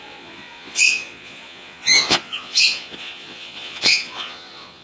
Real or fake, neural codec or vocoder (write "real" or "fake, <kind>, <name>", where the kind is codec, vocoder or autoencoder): fake, vocoder, Vocos